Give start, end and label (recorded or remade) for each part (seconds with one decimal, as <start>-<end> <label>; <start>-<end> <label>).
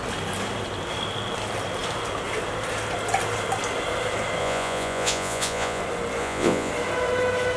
0.0-4.4 recorded; 4.4-5.8 remade; 5.8-6.2 recorded; 6.2-6.7 remade; 6.7-7.6 recorded